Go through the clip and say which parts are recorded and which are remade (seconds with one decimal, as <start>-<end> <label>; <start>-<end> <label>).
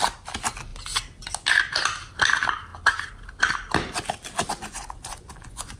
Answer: 0.0-4.5 recorded; 4.5-5.8 remade